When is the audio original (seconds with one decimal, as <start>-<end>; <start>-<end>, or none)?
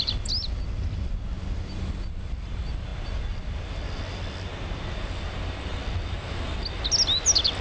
0.0-7.6